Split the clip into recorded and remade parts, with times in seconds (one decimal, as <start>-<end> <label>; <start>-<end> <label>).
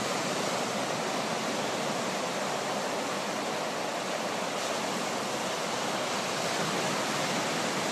0.0-7.9 recorded